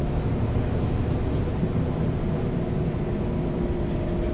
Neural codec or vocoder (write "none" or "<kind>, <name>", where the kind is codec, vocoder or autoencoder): none